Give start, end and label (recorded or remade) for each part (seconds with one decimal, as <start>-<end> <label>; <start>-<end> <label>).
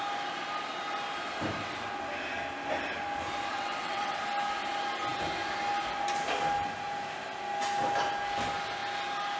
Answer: 0.0-3.5 recorded; 3.5-4.2 remade; 4.2-9.4 recorded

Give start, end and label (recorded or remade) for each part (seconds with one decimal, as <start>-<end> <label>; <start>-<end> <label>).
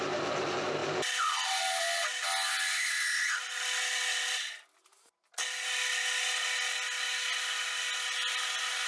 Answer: 0.0-8.9 recorded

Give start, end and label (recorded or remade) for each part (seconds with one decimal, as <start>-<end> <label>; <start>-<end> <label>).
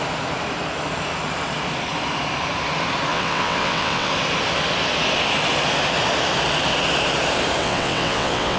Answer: 0.0-3.1 recorded; 3.1-4.1 remade; 4.1-7.6 recorded; 7.6-8.6 remade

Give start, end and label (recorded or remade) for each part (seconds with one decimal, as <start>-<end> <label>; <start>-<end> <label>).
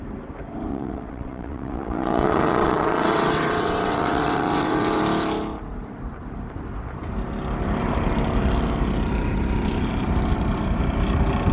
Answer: 0.0-0.7 recorded; 0.7-5.0 remade; 5.0-11.5 recorded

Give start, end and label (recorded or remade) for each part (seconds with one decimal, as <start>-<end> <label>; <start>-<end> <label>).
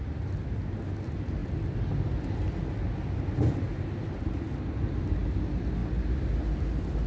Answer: 0.0-7.1 recorded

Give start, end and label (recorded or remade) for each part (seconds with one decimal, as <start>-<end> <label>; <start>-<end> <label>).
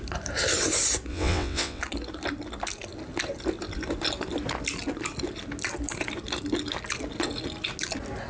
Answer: 0.0-1.1 recorded; 1.1-1.8 remade; 1.8-8.3 recorded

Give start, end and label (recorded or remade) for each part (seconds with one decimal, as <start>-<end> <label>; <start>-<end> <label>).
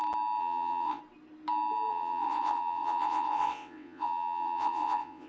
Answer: 0.0-0.4 recorded; 0.4-1.0 remade; 1.0-1.9 recorded; 1.9-5.3 remade